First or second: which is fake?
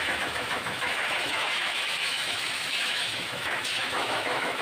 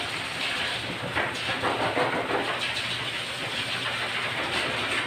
first